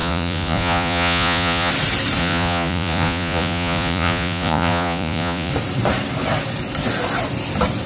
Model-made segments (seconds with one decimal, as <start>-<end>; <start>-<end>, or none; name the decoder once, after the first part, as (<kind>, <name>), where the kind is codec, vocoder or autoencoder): 0.0-1.7 (vocoder, Vocos); 2.2-5.5